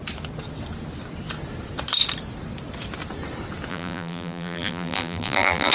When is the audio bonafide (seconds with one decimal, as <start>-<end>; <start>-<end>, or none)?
0.0-3.7